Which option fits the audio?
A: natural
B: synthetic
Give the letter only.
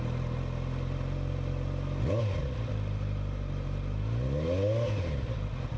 A